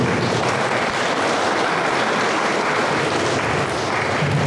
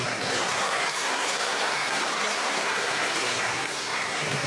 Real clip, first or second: first